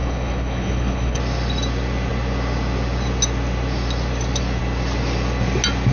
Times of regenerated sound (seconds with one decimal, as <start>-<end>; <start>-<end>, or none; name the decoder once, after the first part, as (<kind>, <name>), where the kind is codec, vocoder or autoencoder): 0.0-1.2 (codec, HILCodec)